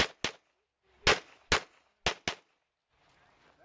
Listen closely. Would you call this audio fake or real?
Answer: real